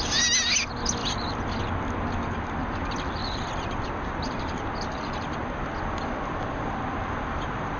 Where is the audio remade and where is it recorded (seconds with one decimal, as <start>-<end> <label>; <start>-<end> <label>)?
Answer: 0.0-7.8 recorded